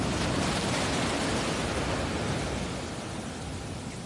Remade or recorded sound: recorded